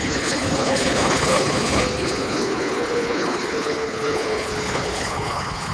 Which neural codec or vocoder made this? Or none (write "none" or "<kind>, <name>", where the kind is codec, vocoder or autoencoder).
codec, HILCodec